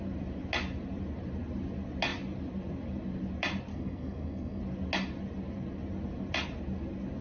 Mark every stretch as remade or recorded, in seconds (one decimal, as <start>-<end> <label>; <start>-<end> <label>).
0.0-3.7 recorded; 3.7-4.6 remade; 4.6-7.2 recorded